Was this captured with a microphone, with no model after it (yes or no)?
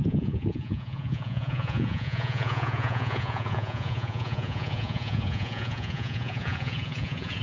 no